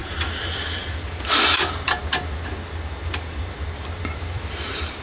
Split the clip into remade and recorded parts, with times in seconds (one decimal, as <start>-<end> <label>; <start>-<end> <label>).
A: 0.0-2.0 remade; 2.0-2.7 recorded; 2.7-5.0 remade